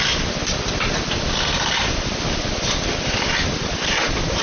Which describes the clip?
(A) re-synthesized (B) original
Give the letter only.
B